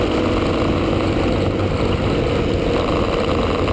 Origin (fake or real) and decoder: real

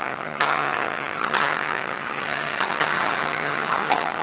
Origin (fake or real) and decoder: fake, vocoder, HiFi-GAN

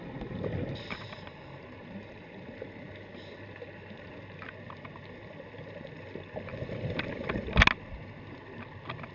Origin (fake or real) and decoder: real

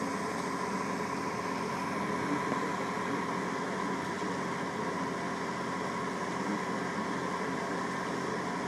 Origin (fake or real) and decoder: real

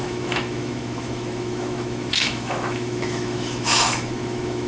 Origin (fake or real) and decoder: fake, autoencoder, DAC-VAE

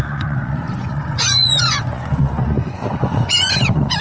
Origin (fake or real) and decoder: fake, vocoder, Vocos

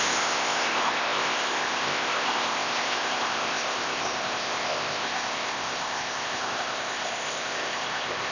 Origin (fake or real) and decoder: fake, codec, ZipCodec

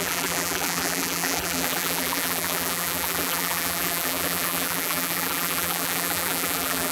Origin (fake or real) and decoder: fake, vocoder, BigVGAN v2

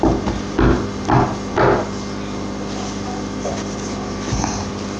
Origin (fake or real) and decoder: real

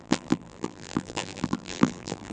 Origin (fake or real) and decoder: fake, vocoder, BigVGAN v2